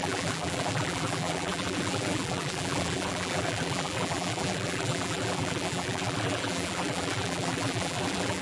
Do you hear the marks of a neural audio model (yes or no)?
yes